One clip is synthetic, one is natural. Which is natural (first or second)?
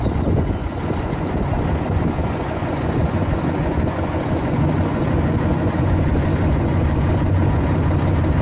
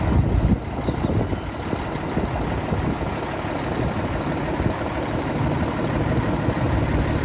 second